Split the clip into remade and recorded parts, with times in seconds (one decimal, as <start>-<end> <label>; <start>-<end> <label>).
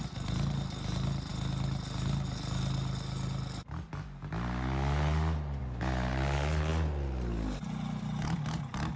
0.0-9.0 recorded